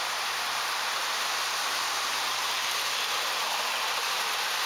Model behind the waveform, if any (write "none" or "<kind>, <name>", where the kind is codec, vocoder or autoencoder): vocoder, BigVGAN v2